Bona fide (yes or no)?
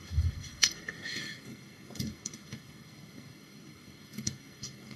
no